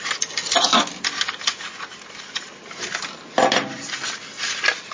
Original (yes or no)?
yes